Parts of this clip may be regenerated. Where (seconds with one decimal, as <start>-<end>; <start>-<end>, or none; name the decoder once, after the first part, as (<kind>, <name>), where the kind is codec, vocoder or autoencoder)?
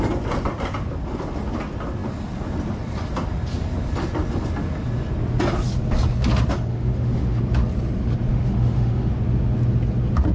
6.7-7.4 (autoencoder, DAC-VAE); 8.3-9.1